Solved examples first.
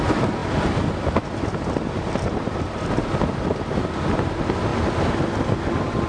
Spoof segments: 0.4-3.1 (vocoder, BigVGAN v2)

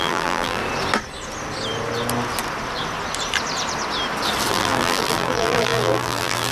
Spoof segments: 0.0-0.6 (vocoder, BigVGAN v2); 4.5-6.5

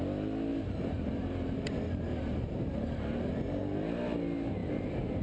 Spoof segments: 0.5-3.6 (vocoder, BigVGAN v2); 4.6-5.2

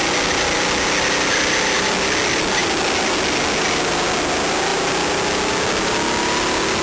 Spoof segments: none

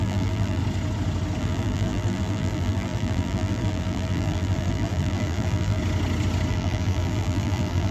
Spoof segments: 0.0-0.6 (vocoder, BigVGAN v2); 1.4-5.8; 6.5-7.9

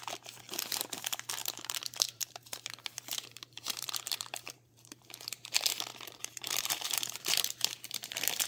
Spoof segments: 1.4-5.0 (vocoder, BigVGAN v2); 5.9-8.5